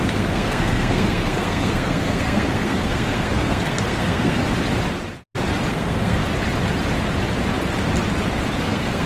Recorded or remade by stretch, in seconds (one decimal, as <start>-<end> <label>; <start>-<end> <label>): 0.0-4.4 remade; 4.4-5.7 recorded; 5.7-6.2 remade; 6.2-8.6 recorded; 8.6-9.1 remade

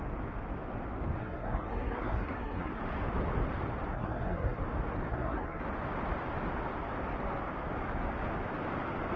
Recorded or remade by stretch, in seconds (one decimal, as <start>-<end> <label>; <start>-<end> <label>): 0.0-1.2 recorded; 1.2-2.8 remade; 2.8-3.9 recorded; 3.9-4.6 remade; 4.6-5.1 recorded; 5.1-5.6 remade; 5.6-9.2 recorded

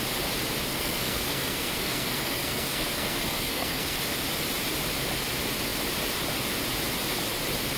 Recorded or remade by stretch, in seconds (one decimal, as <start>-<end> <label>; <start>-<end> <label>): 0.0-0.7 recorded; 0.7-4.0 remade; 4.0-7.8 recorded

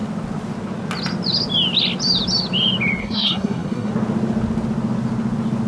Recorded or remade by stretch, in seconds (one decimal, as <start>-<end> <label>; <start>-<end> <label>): 0.0-3.0 recorded; 3.0-3.9 remade; 3.9-5.7 recorded

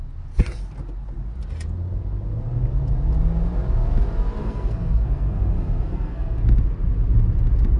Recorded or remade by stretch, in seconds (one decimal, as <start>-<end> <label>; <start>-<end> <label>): 0.0-4.4 recorded; 4.4-6.4 remade; 6.4-7.8 recorded

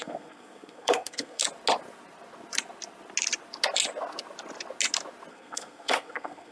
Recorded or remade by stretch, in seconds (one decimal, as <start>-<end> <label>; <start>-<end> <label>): 0.0-1.4 remade; 1.4-5.3 recorded; 5.3-6.5 remade